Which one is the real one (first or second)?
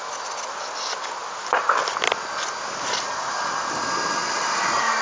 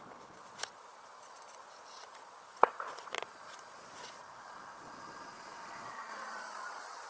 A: first